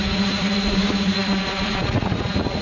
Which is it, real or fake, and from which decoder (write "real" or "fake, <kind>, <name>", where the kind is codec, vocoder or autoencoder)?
fake, vocoder, Vocos